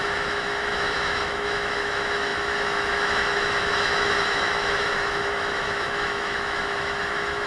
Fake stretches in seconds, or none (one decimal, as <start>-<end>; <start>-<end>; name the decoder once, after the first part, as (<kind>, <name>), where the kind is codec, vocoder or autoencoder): 0.0-7.5 (autoencoder, DAC-VAE)